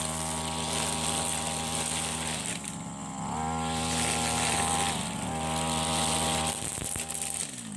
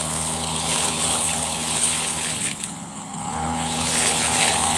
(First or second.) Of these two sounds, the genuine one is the first